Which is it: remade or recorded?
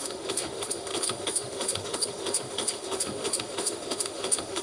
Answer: remade